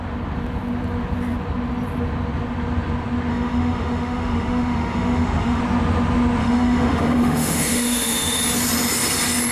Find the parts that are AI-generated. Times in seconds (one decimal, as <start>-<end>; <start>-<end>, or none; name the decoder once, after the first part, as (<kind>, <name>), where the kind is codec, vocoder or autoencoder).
3.3-5.6 (autoencoder, DAC-VAE); 6.4-8.4